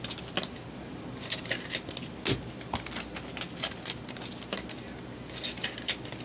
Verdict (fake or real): real